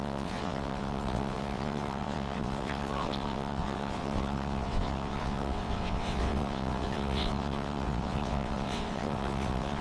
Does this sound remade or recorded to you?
remade